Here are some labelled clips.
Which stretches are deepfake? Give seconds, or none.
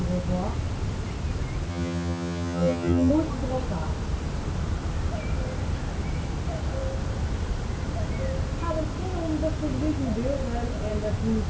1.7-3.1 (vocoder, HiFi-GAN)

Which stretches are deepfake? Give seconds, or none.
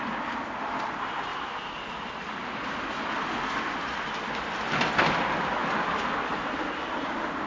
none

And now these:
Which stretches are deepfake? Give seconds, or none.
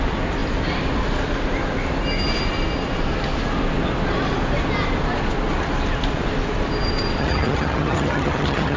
7.2-8.8 (vocoder, HiFi-GAN)